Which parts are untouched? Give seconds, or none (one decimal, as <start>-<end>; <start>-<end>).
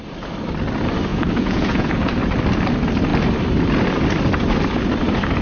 0.0-1.1; 2.1-5.4